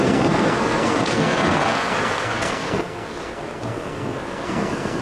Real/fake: fake